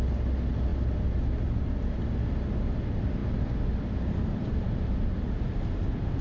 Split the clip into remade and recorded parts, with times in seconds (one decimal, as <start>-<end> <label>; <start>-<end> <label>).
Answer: 0.0-3.2 recorded; 3.2-5.7 remade; 5.7-6.2 recorded